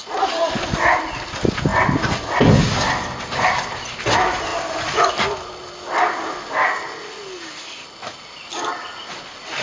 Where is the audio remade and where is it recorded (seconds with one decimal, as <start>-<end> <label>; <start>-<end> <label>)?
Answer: 0.0-9.6 recorded